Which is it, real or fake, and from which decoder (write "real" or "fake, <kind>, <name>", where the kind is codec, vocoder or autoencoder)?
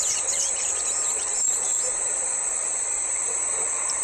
fake, vocoder, BigVGAN v2